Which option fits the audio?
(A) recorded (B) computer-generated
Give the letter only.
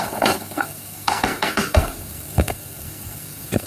B